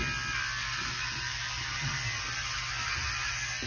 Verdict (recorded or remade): recorded